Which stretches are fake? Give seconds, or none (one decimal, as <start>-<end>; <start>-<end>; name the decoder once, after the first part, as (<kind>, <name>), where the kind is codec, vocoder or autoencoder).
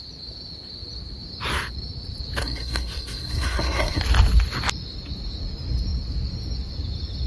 2.4-4.0 (codec, SNAC)